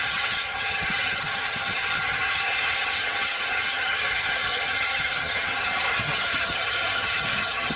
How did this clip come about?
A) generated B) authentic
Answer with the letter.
A